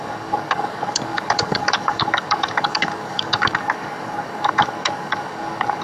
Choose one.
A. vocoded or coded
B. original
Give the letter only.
A